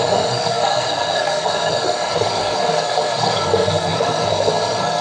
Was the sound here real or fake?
fake